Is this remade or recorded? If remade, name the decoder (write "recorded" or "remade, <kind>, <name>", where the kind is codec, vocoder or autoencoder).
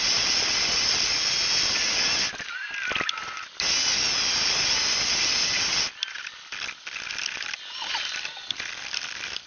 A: recorded